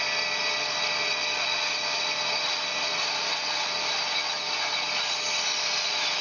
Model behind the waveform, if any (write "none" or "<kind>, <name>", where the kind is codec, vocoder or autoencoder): none